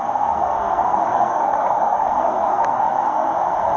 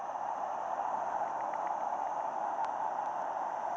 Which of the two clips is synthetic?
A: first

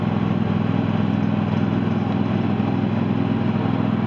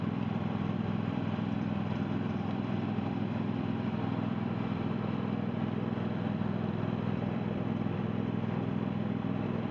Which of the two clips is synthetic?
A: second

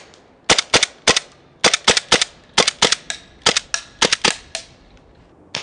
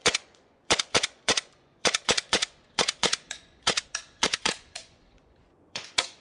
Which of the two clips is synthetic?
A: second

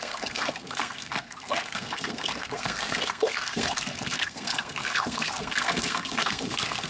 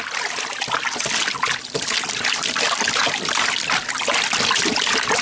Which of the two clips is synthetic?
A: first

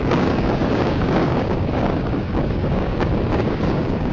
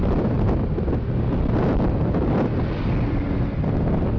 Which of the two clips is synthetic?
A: first